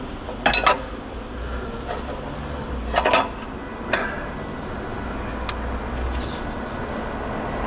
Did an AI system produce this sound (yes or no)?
no